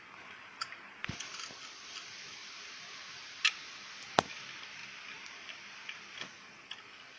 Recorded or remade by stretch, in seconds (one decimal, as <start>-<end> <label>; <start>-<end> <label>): 0.0-2.4 recorded; 2.4-4.1 remade; 4.1-7.2 recorded